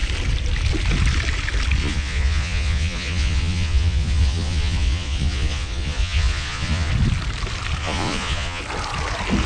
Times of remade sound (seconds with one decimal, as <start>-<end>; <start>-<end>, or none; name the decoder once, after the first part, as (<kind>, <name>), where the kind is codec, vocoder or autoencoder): 1.8-6.9 (vocoder, Vocos); 7.8-8.6

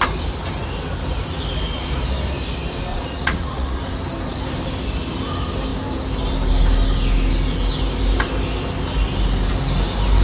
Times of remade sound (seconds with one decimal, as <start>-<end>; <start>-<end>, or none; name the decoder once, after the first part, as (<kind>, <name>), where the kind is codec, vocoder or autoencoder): 2.9-3.8 (vocoder, Vocos)

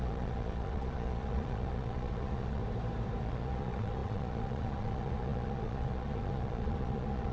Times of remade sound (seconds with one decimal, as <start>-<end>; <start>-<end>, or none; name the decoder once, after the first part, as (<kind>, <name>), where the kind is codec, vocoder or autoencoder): 0.0-2.6 (vocoder, Vocos); 3.2-7.3